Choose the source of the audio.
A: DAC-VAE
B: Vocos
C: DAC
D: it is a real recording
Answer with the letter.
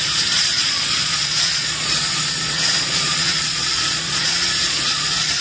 B